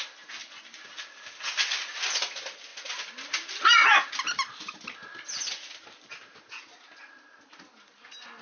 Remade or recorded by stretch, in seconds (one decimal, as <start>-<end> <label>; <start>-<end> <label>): 0.0-8.4 recorded